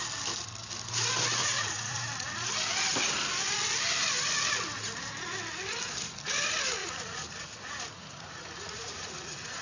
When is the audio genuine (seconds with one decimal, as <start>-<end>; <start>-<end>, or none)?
0.0-1.4; 2.0-6.8